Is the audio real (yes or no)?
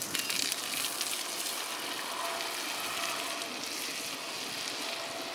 yes